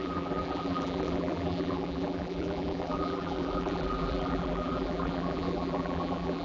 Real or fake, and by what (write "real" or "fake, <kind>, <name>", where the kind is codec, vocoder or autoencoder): fake, vocoder, BigVGAN v2